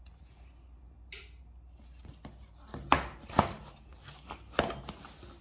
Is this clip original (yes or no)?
yes